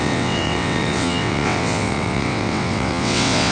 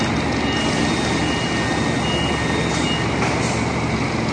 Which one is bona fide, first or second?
second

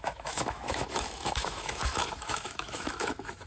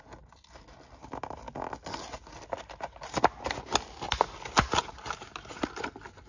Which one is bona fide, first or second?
second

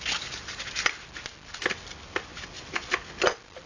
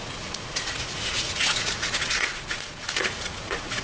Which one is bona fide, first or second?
first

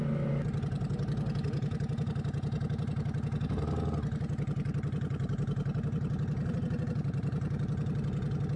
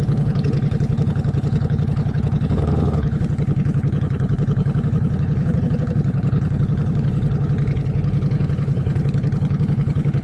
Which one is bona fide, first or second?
first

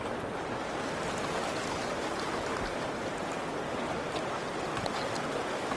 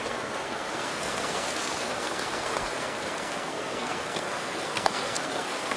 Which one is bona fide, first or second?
first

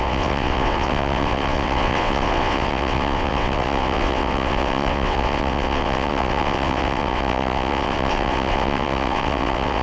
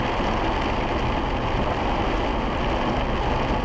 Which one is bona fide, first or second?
second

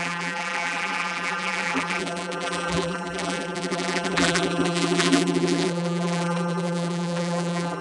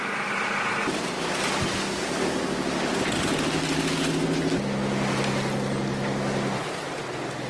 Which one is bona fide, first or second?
second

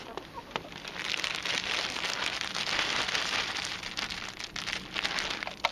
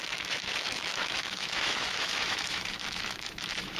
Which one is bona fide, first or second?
first